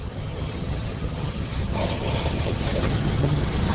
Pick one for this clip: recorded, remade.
remade